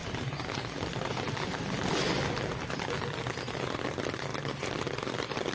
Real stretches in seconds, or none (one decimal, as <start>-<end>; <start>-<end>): 0.0-3.1; 4.3-5.1